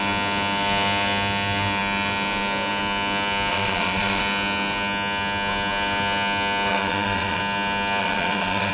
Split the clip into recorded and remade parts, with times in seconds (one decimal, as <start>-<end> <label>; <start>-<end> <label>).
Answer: 0.0-3.5 recorded; 3.5-4.2 remade; 4.2-6.7 recorded; 6.7-7.4 remade; 7.4-8.0 recorded; 8.0-8.7 remade